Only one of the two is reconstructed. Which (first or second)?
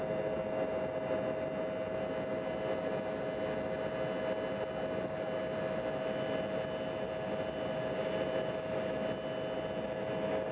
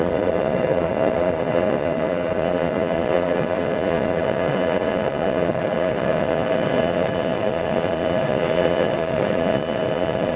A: second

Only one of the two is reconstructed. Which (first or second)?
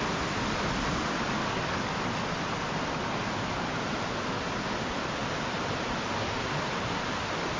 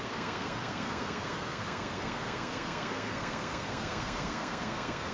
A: second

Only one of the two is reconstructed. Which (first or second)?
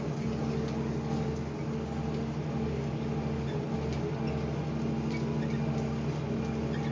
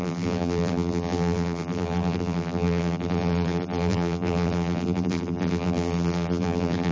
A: second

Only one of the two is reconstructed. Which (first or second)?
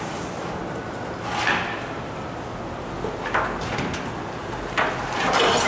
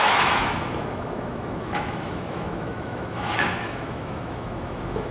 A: second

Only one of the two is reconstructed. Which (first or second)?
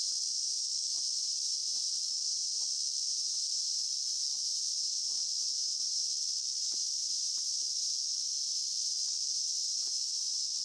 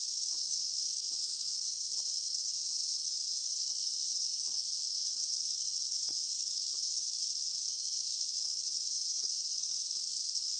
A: second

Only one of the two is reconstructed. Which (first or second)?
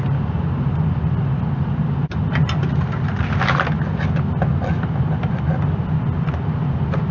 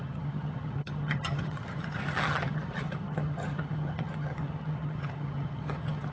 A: second